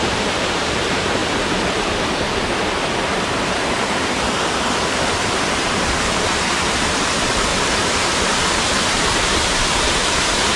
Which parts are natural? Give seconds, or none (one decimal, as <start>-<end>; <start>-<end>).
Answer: 1.2-4.8; 7.5-8.7